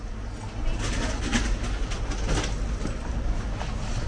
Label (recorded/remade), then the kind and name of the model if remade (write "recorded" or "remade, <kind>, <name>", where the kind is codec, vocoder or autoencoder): recorded